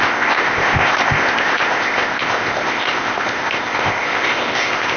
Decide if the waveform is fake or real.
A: fake